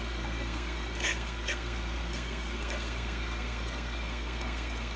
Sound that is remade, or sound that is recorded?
remade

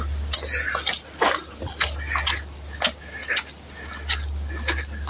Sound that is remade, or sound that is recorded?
recorded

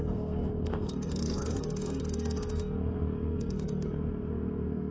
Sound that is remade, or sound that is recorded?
remade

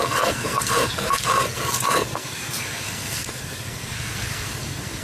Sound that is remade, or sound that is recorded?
remade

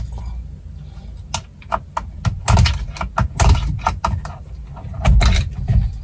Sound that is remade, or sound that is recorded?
recorded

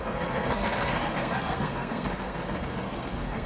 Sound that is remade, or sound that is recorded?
remade